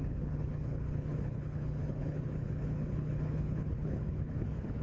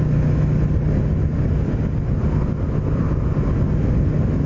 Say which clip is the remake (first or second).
first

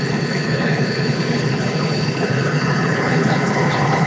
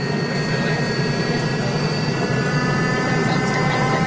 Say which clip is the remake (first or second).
first